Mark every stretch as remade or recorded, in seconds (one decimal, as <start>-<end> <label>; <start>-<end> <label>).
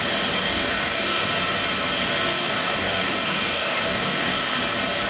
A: 0.0-0.4 recorded; 0.4-1.3 remade; 1.3-2.3 recorded; 2.3-4.6 remade; 4.6-5.1 recorded